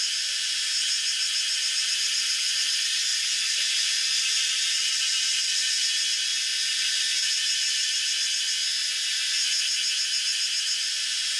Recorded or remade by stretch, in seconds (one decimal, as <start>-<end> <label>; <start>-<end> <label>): 0.0-1.5 recorded; 1.5-2.7 remade; 2.7-3.1 recorded; 3.1-5.8 remade; 5.8-6.5 recorded; 6.5-7.3 remade; 7.3-11.4 recorded